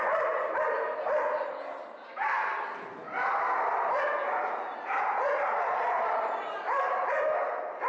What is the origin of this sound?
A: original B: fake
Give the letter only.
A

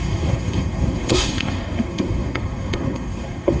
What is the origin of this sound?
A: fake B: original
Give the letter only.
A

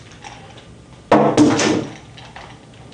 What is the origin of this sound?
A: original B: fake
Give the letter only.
A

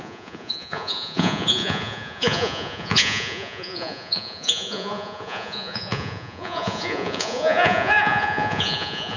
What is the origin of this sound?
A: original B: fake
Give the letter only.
B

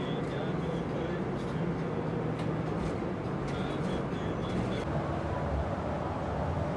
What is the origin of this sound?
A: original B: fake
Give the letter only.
A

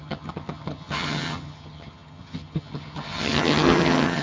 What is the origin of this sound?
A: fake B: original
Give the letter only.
A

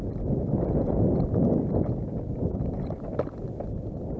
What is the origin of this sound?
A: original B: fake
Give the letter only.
A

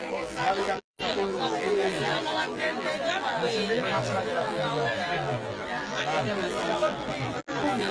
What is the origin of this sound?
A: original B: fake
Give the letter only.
B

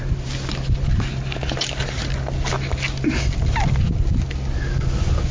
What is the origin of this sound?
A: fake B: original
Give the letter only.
B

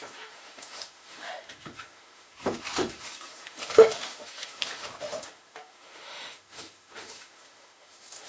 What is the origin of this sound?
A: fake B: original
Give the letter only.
A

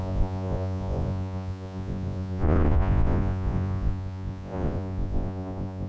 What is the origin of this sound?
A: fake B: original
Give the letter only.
A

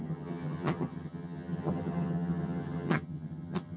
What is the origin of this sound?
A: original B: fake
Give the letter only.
B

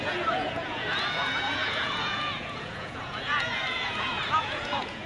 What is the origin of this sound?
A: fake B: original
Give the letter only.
A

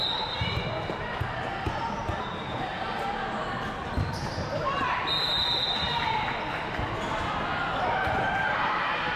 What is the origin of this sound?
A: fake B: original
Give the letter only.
B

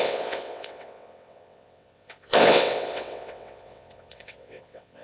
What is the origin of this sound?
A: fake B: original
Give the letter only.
A